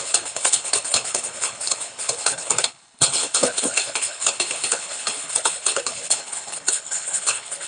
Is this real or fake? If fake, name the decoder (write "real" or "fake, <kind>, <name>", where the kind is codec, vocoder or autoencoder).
fake, codec, HILCodec